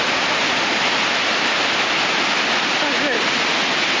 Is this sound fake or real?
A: real